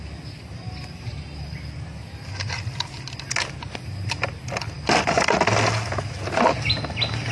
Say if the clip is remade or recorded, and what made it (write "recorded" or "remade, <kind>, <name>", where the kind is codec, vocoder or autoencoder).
recorded